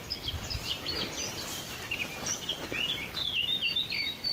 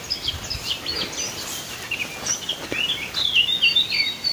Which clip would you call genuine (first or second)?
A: second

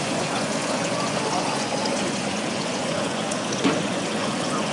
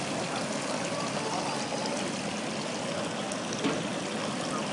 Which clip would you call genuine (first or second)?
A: second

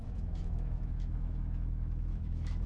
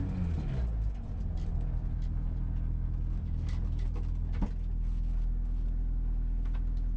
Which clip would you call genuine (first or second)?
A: second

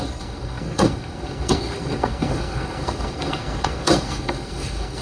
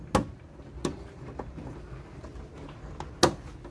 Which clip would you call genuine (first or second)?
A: second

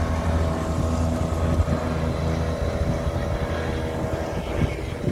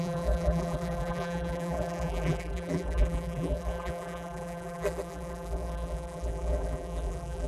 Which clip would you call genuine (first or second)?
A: first